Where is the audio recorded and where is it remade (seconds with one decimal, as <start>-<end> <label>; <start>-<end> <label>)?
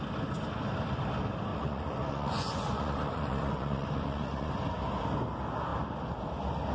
0.0-1.5 recorded; 1.5-4.5 remade; 4.5-6.7 recorded